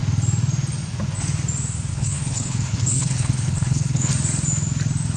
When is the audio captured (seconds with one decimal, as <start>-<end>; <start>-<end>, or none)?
0.0-1.9; 4.1-5.2